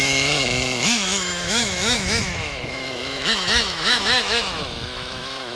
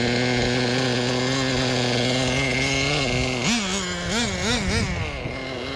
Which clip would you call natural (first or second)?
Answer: second